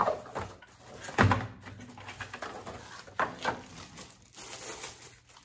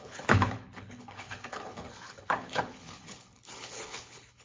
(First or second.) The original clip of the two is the first